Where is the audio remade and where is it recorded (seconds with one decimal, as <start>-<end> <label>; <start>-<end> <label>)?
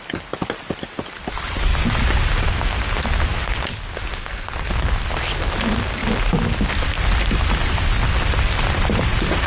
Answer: 0.0-4.2 recorded; 4.2-4.7 remade; 4.7-9.5 recorded